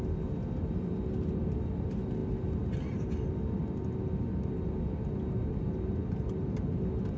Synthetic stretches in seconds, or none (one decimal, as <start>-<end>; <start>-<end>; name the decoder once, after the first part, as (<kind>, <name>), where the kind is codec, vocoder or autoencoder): 6.0-6.8 (vocoder, BigVGAN v2)